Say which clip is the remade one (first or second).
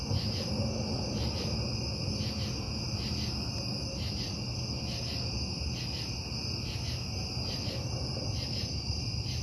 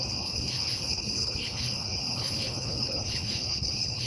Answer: second